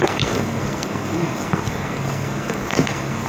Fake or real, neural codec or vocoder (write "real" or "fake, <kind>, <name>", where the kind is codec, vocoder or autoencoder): fake, codec, SNAC